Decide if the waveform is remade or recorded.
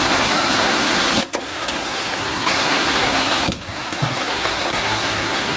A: remade